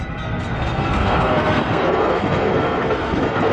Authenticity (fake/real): fake